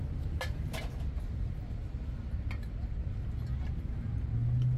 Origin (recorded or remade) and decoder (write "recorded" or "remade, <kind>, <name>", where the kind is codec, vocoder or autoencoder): recorded